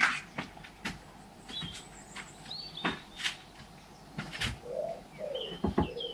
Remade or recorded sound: recorded